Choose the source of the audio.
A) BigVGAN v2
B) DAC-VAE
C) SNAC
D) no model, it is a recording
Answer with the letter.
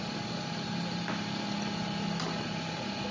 D